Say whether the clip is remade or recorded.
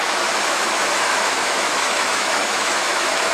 remade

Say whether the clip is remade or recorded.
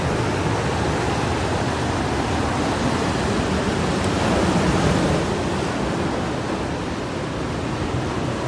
recorded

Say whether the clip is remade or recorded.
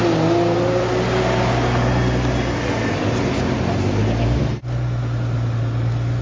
recorded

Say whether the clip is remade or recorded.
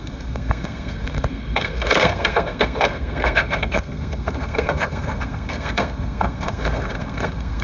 remade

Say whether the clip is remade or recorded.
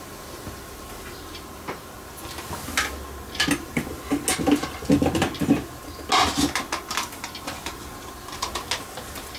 recorded